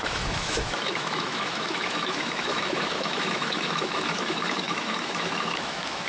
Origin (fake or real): fake